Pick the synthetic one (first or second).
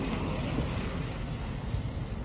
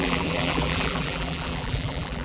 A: second